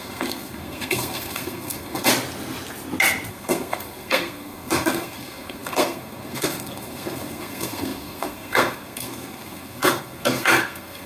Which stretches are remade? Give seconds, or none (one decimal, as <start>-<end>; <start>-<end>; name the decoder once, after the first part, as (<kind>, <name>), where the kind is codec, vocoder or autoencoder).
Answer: 0.0-2.1 (codec, SNAC); 3.3-11.1